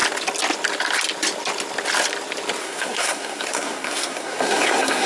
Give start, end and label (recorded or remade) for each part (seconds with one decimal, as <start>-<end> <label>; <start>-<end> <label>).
0.0-2.6 recorded; 2.6-5.1 remade